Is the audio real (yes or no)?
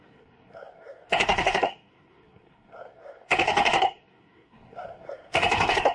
no